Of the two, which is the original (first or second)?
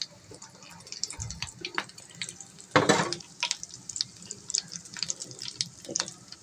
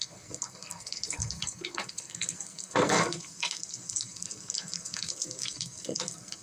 first